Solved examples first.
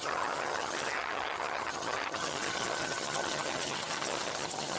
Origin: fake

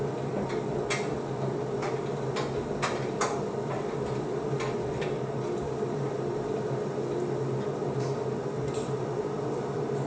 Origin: real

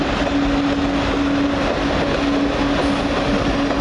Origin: real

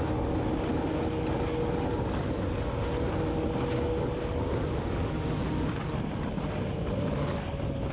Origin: real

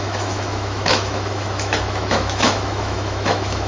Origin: fake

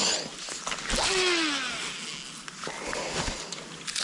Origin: real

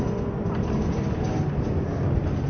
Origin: real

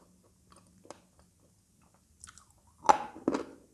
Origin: real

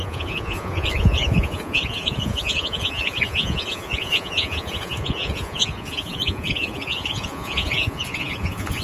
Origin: fake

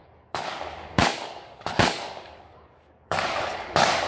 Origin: fake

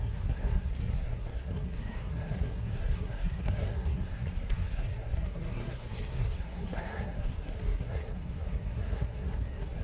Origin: fake